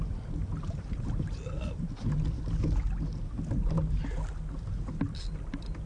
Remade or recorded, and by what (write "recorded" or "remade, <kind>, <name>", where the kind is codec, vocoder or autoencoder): recorded